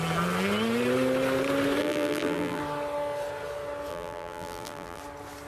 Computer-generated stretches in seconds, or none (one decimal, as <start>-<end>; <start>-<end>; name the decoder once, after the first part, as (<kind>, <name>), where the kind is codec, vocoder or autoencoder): 1.8-2.6 (vocoder, BigVGAN v2); 3.9-5.0